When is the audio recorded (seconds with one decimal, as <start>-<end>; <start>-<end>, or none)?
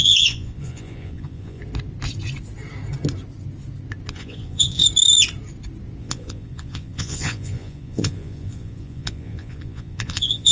1.6-4.1; 4.8-6.0